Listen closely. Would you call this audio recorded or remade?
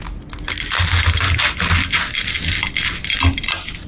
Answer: recorded